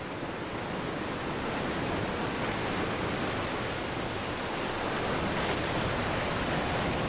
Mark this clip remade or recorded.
recorded